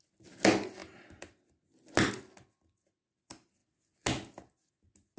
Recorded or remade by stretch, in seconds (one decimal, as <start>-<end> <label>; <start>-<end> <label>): 0.0-5.2 recorded